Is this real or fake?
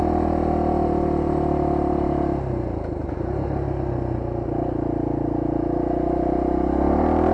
real